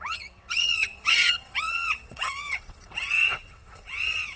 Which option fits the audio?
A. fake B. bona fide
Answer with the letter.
A